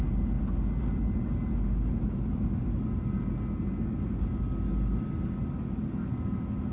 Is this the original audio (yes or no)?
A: yes